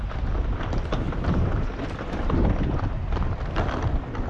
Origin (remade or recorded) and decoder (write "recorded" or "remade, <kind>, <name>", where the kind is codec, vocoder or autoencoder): remade, vocoder, BigVGAN v2